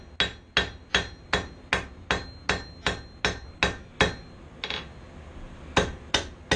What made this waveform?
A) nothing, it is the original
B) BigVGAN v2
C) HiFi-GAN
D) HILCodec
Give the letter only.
A